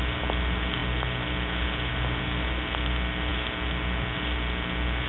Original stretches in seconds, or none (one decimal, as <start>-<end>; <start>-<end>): 0.0-5.1